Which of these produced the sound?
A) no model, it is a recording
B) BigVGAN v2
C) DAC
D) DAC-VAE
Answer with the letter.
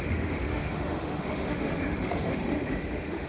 D